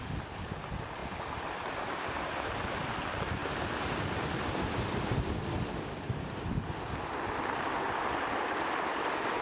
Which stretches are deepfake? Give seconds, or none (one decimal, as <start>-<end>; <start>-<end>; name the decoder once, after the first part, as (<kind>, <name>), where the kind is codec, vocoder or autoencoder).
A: none